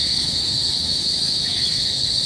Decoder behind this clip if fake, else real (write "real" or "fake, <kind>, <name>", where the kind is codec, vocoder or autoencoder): fake, codec, DAC